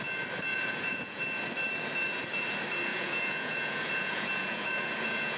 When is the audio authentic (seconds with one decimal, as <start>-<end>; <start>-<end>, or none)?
0.0-0.5; 1.2-2.9